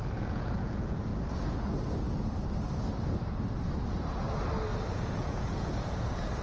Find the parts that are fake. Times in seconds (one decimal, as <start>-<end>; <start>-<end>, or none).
0.0-1.1; 4.9-6.4